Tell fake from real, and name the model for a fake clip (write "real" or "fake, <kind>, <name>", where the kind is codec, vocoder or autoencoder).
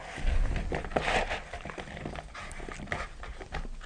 real